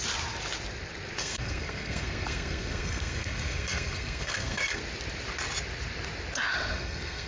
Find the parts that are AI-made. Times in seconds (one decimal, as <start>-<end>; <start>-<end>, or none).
1.2-4.8; 6.7-7.3